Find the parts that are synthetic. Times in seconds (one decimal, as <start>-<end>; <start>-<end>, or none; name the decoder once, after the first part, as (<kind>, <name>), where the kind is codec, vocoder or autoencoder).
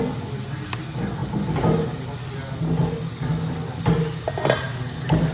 none